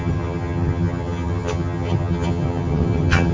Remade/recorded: remade